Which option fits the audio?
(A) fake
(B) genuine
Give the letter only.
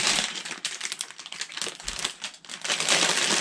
B